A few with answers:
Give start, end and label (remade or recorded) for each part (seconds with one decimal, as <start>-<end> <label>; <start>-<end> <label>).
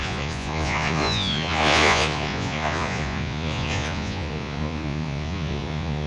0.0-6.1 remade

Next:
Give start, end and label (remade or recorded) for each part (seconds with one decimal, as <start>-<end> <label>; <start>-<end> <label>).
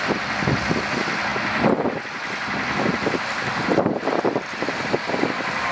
0.0-5.7 recorded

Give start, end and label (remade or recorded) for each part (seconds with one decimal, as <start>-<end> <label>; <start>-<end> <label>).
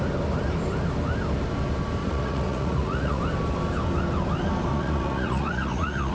0.0-2.0 recorded; 2.0-3.2 remade; 3.2-4.7 recorded; 4.7-6.1 remade